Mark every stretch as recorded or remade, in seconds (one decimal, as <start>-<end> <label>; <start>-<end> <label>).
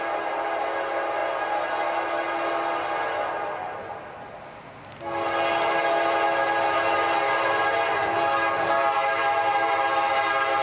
0.0-10.6 recorded